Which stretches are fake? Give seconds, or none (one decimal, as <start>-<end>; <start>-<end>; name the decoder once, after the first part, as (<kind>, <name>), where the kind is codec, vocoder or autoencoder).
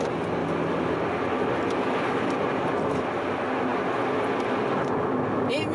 none